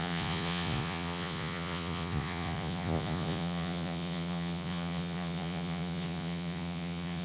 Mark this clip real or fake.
fake